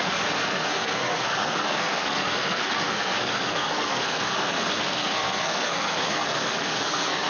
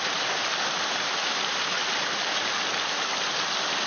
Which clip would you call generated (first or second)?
first